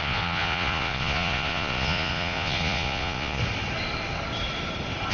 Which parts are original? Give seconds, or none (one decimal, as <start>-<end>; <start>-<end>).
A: 3.4-5.1